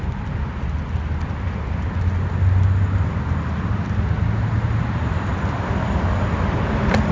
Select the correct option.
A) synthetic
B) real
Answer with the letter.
B